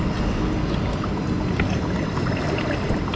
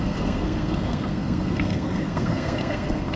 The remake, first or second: second